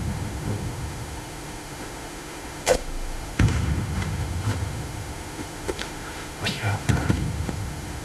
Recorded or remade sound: remade